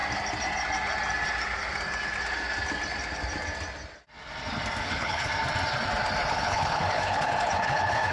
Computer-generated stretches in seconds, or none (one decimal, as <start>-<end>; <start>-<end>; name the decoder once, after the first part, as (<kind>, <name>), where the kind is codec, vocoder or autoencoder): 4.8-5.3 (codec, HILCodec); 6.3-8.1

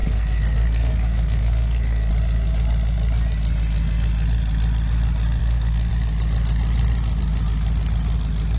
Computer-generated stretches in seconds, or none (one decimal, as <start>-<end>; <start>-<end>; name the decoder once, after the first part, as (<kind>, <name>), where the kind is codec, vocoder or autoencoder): 0.0-2.1 (codec, SNAC); 5.4-5.9

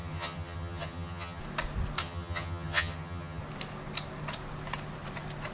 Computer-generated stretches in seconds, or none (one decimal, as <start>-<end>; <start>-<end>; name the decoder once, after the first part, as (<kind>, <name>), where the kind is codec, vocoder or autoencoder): 0.0-1.4 (vocoder, HiFi-GAN); 2.0-3.4

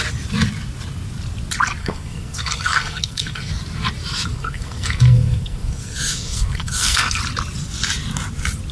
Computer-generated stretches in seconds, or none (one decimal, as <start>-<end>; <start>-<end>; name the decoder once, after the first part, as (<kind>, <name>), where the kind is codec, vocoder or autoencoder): 1.8-3.5 (codec, SNAC); 4.3-7.2